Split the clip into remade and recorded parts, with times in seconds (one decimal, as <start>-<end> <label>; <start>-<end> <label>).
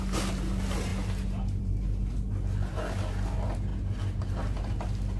0.0-5.2 recorded